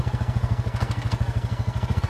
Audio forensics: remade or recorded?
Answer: remade